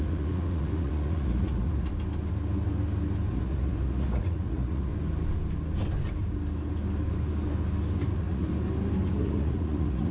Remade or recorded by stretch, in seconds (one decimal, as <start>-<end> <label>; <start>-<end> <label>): 0.0-1.9 remade; 1.9-3.3 recorded; 3.3-4.9 remade; 4.9-8.1 recorded; 8.1-8.5 remade; 8.5-9.2 recorded; 9.2-10.1 remade